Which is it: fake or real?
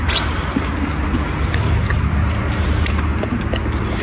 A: real